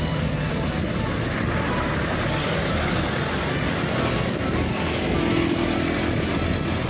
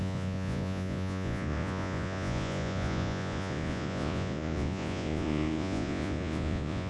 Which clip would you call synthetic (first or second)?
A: second